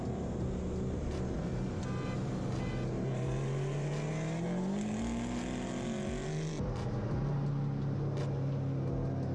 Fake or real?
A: real